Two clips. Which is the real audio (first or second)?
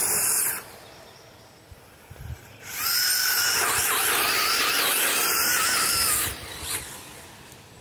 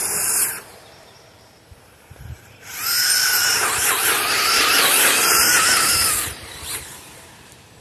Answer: first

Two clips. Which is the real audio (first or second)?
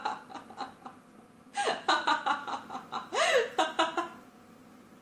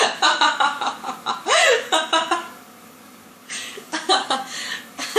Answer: first